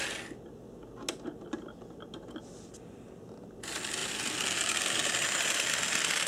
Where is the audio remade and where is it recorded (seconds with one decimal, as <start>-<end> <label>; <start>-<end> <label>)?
0.0-6.3 recorded